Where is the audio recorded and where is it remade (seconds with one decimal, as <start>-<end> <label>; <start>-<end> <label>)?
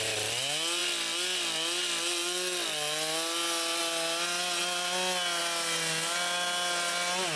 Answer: 0.0-7.4 recorded